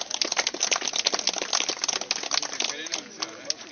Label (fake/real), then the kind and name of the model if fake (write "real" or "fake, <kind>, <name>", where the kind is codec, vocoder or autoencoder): real